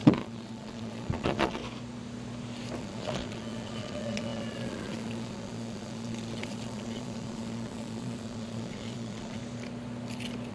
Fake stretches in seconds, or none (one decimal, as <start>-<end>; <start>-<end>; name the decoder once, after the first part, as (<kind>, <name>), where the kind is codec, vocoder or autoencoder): 0.0-1.6 (vocoder, Vocos); 2.8-9.4